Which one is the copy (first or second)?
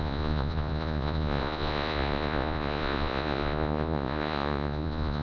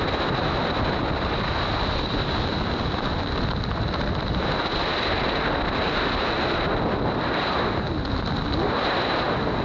first